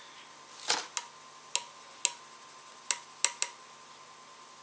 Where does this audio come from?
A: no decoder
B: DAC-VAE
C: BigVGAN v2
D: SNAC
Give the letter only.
A